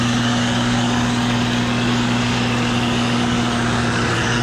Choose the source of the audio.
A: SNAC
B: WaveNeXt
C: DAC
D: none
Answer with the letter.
C